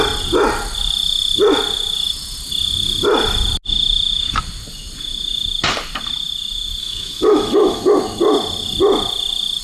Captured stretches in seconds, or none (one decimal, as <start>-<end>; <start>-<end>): 0.0-6.8; 7.9-9.6